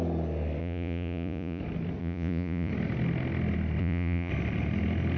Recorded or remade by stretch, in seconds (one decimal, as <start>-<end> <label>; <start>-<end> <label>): 0.0-0.6 recorded; 0.6-1.6 remade; 1.6-2.0 recorded; 2.0-2.7 remade; 2.7-3.8 recorded; 3.8-4.3 remade; 4.3-5.2 recorded